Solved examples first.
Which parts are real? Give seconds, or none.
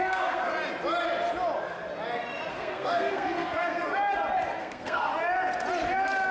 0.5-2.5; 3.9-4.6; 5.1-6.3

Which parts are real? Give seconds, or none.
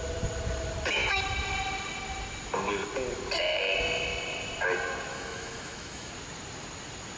0.0-5.1; 6.1-7.2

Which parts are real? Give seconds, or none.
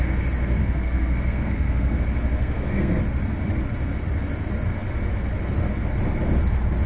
0.0-0.6; 2.0-2.4; 3.0-6.9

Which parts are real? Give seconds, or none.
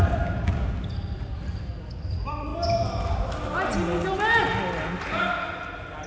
0.0-6.1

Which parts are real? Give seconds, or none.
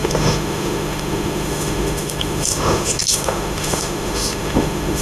none